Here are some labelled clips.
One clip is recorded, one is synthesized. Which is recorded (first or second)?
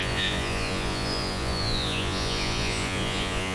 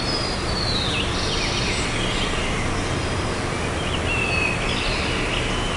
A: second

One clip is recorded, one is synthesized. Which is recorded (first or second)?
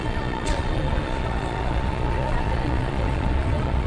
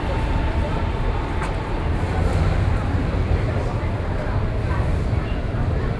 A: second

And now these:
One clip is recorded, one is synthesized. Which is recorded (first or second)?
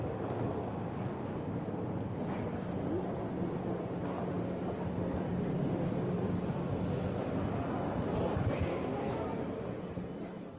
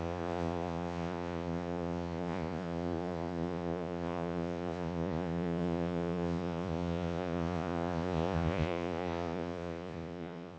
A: first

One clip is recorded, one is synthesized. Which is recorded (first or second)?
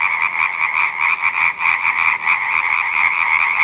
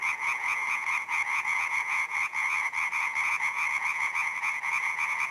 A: first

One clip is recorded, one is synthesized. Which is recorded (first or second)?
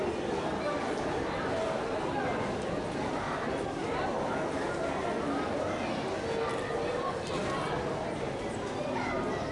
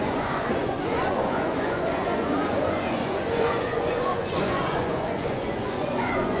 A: first